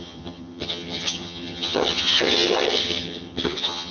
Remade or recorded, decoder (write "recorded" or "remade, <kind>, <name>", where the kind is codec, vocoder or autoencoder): remade, vocoder, HiFi-GAN